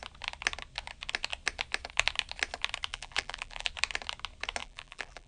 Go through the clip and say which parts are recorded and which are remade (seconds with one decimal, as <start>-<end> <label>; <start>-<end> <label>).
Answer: 0.0-2.9 recorded; 2.9-3.7 remade; 3.7-4.6 recorded; 4.6-5.3 remade